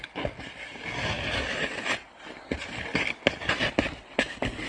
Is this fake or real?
real